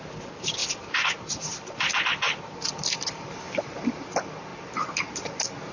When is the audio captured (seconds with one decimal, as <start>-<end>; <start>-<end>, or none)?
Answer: 0.0-0.6; 3.5-4.5; 5.1-5.7

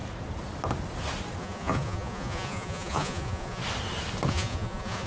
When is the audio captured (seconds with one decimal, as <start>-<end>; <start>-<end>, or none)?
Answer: 0.0-1.4; 3.6-4.3

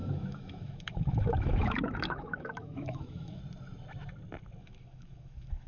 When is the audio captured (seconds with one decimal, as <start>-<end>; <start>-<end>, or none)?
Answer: 3.4-4.6

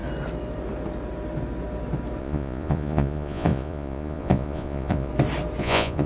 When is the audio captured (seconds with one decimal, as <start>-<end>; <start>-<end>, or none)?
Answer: 0.0-2.2; 5.1-5.6

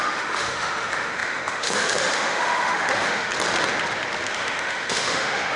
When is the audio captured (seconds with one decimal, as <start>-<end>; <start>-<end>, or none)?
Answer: 3.3-4.3

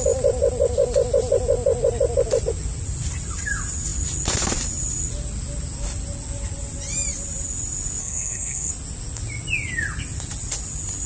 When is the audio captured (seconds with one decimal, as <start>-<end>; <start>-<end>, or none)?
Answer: 0.0-8.0; 8.7-11.1

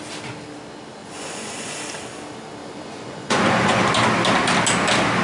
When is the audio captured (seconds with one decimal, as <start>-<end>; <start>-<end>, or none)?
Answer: 0.0-1.0; 1.8-2.6; 3.8-5.2